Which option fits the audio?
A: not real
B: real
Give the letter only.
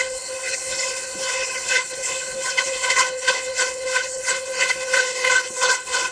A